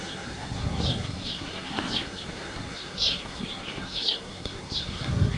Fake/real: fake